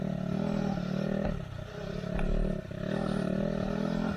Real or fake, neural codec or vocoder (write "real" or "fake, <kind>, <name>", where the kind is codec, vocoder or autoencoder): real